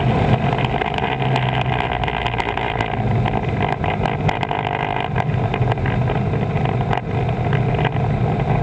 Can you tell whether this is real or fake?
real